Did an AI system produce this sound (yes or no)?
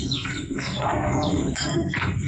yes